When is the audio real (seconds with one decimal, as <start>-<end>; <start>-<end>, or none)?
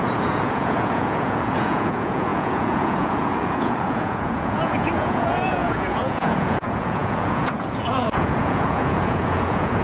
none